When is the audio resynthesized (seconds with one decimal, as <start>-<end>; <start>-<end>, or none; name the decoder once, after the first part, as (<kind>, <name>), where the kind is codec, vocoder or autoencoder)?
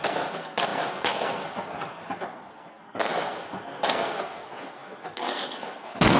0.0-6.2 (codec, SNAC)